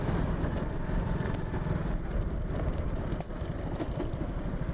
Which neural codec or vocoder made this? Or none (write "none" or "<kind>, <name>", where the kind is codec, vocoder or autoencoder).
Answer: vocoder, BigVGAN v2